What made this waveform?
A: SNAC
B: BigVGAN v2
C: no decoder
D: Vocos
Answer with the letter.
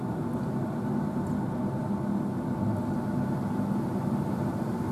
C